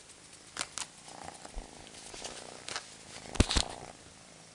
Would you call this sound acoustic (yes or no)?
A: yes